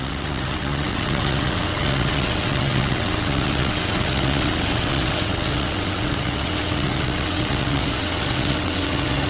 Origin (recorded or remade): remade